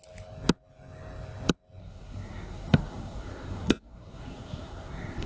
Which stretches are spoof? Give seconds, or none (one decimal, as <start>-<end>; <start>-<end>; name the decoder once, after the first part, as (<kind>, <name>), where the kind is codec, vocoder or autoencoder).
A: 1.8-5.3 (codec, SNAC)